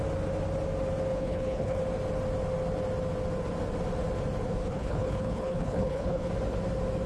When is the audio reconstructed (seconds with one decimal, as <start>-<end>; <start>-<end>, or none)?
1.1-1.8; 4.6-6.3